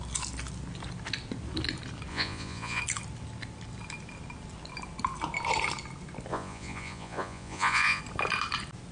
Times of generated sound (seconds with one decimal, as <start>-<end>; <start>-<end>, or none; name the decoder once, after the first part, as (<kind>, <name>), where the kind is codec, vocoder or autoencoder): 2.1-2.8 (vocoder, Vocos); 6.3-8.0